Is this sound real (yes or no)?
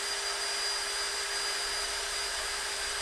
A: yes